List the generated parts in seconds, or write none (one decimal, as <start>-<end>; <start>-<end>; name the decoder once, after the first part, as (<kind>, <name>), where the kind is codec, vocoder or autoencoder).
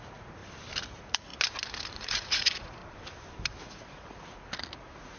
0.0-0.4 (vocoder, Vocos); 0.9-1.3; 1.9-2.8; 3.6-5.2